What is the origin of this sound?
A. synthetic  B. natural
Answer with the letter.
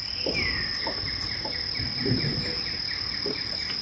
B